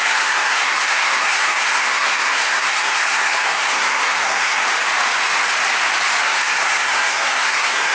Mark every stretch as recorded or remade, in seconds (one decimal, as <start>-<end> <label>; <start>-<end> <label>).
0.0-4.6 remade; 4.6-6.2 recorded; 6.2-7.9 remade